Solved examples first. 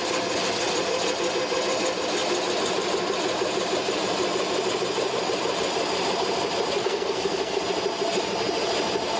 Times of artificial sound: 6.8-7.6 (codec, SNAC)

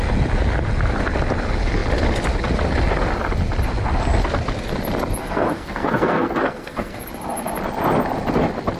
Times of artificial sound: 5.2-7.0 (codec, SNAC)

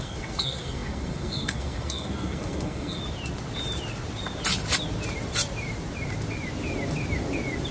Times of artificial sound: 0.0-3.0 (codec, SNAC)

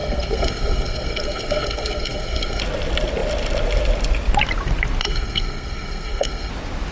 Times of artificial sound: 0.0-2.6 (codec, SNAC); 5.0-6.5

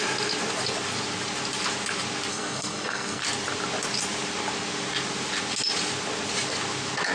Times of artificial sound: 2.3-3.2 (codec, SNAC)

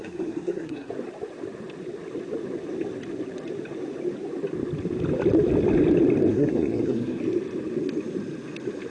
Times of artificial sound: 0.0-0.9 (codec, SNAC); 6.3-7.2

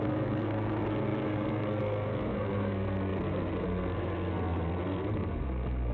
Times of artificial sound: 0.0-5.9 (codec, SNAC)